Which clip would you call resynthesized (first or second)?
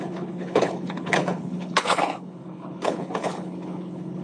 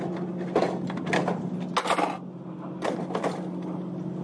first